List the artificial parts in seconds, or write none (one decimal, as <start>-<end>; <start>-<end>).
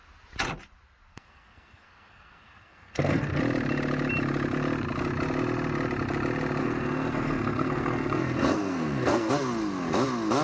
1.1-3.4; 6.6-9.3